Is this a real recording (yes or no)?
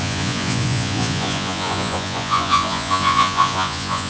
no